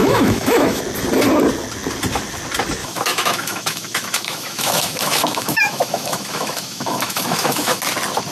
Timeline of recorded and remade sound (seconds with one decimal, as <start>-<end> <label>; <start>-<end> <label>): 0.0-0.8 remade; 0.8-2.8 recorded; 2.8-7.8 remade; 7.8-8.3 recorded